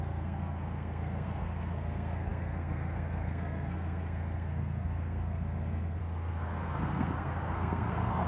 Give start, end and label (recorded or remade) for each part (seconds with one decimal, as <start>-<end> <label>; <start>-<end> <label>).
0.0-8.3 remade